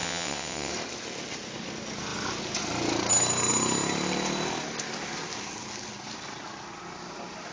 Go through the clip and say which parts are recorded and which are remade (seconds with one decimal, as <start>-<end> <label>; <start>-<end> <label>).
0.0-0.7 remade; 0.7-7.5 recorded